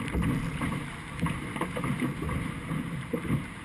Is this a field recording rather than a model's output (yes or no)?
yes